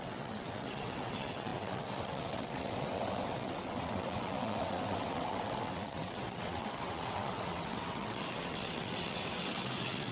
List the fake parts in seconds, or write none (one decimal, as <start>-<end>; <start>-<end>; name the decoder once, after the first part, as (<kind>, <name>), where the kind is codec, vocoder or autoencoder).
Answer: 0.0-10.1 (vocoder, WaveNeXt)